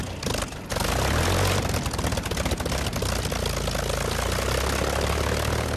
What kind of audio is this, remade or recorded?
recorded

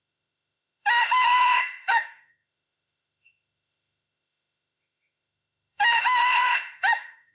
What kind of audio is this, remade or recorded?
remade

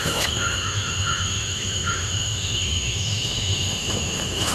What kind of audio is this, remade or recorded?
remade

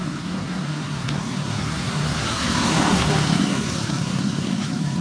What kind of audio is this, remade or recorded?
remade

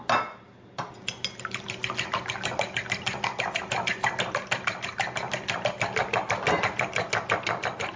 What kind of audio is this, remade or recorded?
recorded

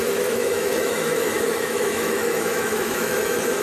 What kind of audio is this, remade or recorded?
remade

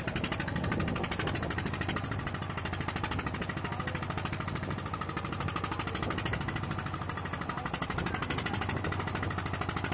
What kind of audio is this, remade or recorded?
recorded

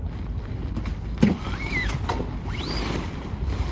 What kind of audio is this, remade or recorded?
recorded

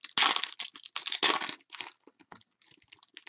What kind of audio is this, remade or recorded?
recorded